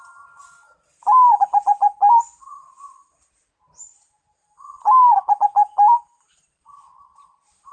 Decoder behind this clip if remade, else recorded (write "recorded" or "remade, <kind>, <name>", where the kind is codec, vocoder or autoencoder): recorded